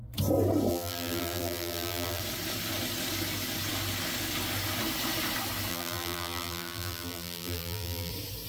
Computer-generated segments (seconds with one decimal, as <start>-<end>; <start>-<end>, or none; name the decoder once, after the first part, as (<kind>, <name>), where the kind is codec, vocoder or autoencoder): 0.7-2.2 (vocoder, BigVGAN v2); 5.7-8.1